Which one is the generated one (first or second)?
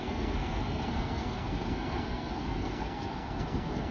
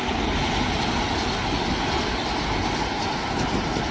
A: first